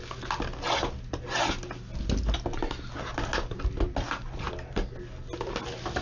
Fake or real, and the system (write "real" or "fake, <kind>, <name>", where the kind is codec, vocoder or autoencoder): real